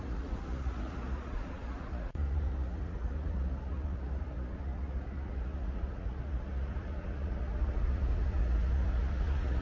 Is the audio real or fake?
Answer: fake